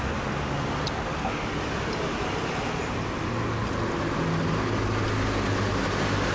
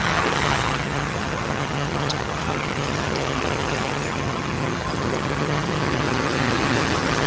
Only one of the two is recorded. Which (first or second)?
first